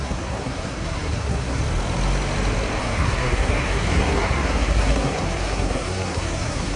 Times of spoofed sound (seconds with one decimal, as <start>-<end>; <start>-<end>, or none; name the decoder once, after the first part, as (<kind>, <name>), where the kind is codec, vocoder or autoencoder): 0.0-1.6 (codec, SNAC); 2.8-6.8